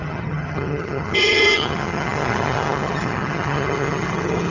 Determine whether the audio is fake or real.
fake